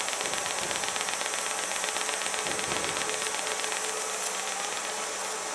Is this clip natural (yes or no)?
yes